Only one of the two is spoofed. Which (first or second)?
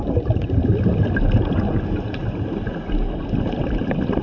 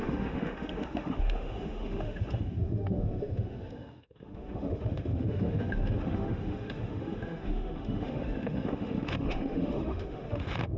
second